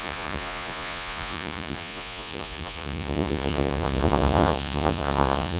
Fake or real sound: fake